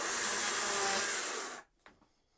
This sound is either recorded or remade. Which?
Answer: recorded